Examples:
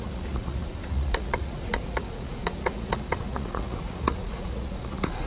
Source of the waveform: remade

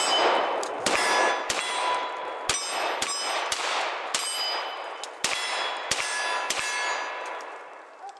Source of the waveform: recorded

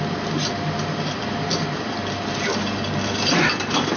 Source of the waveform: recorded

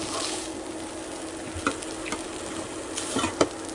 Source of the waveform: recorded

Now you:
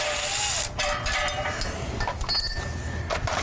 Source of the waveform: recorded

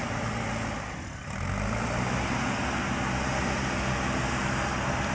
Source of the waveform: recorded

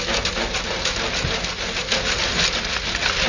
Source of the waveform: recorded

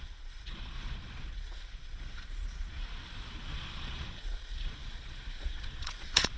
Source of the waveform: remade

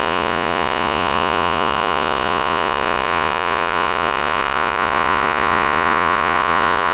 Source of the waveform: remade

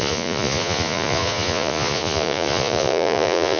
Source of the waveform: remade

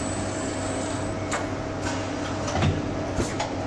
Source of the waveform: recorded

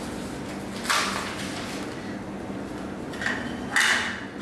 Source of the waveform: recorded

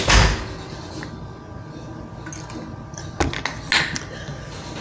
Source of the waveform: recorded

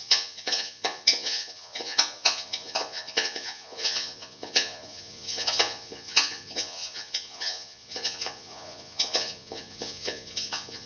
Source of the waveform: remade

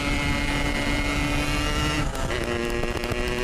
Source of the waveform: recorded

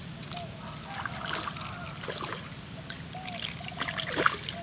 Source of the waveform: recorded